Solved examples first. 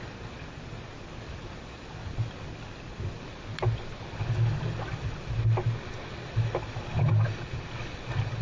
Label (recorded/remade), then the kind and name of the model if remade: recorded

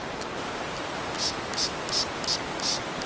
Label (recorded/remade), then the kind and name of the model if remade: recorded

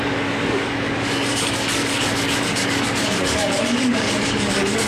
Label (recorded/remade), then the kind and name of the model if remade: remade, codec, DAC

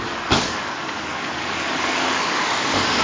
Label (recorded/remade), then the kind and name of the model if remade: remade, codec, DAC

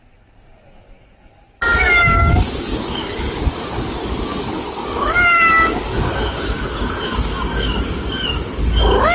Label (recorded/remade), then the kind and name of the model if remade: remade, codec, DAC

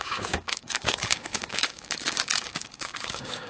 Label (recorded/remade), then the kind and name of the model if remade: remade, codec, DAC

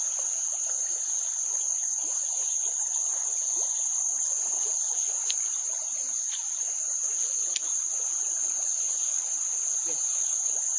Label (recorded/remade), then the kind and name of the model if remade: recorded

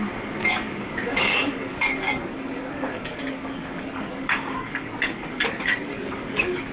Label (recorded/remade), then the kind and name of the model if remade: remade, codec, DAC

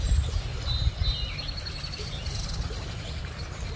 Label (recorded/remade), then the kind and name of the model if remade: recorded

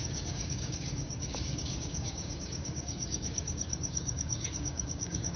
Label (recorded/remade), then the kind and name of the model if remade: remade, codec, DAC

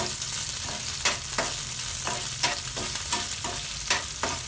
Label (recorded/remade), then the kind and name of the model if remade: recorded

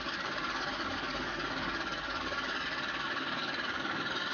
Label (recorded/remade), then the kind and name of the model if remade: remade, codec, DAC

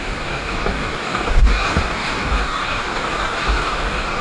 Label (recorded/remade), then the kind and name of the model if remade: remade, codec, DAC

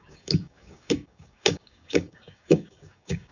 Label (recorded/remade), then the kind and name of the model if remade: remade, codec, DAC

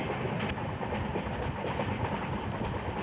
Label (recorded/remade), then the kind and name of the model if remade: recorded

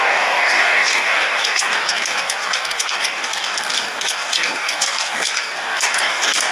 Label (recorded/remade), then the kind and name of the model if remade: remade, codec, DAC